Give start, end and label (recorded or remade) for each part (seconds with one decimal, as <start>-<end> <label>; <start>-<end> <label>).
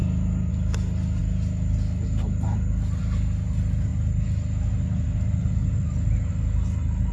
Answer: 0.0-7.1 recorded